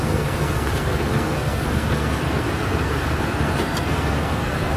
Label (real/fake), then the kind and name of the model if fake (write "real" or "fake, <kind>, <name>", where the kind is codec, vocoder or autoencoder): fake, codec, SNAC